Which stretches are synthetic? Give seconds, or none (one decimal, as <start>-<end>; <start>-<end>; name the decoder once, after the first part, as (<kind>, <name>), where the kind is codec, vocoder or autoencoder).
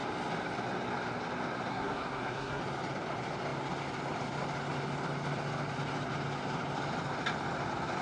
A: 1.7-2.6 (codec, SNAC)